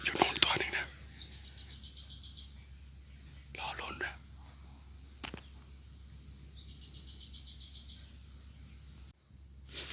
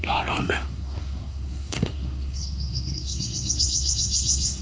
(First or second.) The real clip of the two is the first